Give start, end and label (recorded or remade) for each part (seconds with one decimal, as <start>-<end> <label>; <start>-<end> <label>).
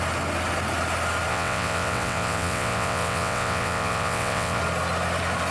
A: 0.0-1.3 recorded; 1.3-4.6 remade; 4.6-5.5 recorded